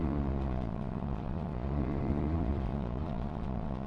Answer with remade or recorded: remade